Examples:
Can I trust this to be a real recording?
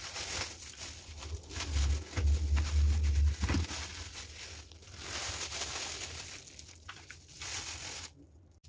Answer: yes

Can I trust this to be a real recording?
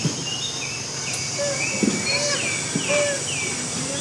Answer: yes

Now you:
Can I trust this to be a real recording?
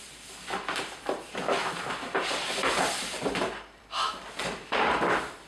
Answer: no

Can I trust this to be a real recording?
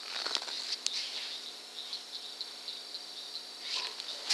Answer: yes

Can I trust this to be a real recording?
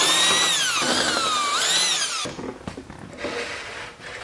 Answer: yes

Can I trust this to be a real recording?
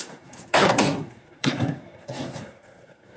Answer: no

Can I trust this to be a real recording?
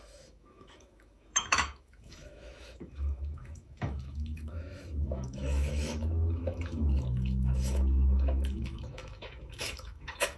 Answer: no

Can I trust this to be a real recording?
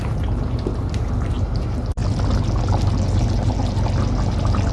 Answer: yes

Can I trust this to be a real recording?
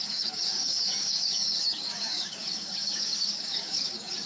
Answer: no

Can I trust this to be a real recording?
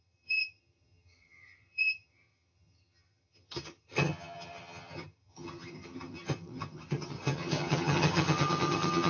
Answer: no